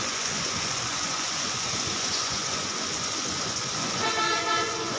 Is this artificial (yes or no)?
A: yes